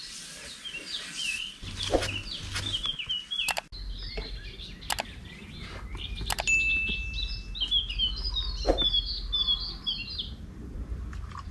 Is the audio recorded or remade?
recorded